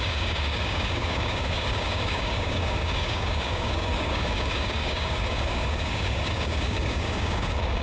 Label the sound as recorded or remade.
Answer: remade